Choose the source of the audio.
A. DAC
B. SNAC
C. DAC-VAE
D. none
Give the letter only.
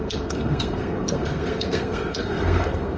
B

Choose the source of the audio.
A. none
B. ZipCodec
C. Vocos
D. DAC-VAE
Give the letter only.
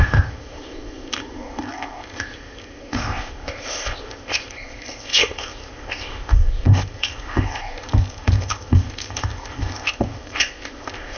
B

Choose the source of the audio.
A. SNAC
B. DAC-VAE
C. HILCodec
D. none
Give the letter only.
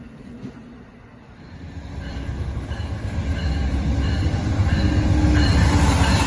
D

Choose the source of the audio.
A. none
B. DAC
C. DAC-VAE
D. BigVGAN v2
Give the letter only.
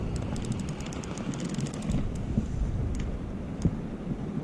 A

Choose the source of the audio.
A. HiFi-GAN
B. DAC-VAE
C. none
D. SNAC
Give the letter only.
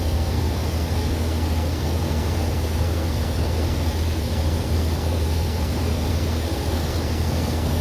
D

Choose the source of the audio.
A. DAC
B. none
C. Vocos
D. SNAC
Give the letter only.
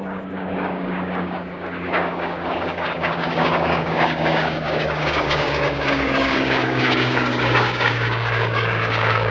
A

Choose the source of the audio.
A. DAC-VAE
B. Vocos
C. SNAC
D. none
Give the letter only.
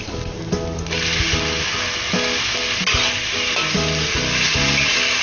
D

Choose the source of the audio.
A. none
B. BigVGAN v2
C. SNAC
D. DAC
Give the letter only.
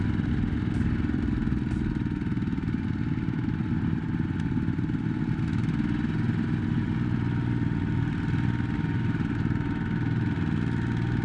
A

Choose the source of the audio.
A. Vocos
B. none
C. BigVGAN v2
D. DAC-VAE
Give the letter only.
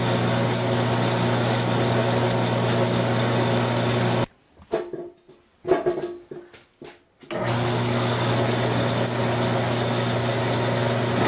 B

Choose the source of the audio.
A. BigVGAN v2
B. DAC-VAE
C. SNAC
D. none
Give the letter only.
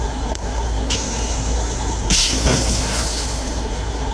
C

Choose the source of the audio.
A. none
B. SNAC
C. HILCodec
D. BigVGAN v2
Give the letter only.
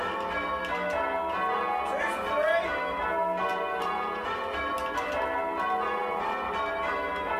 A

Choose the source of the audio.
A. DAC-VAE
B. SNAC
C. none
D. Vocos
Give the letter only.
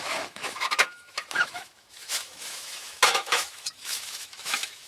A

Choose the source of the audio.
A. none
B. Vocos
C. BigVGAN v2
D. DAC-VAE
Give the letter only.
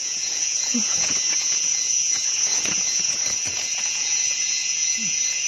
B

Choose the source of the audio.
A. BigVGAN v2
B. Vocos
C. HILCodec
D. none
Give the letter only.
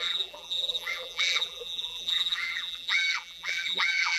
A